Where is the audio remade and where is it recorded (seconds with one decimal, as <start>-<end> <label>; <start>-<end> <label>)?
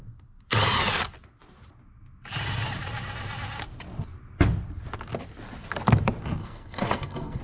0.0-6.4 recorded; 6.4-7.4 remade